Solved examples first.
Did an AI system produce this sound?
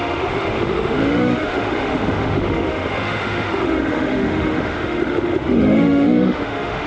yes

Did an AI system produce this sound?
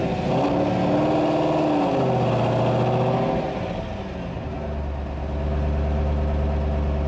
no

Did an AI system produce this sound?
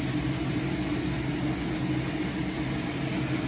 no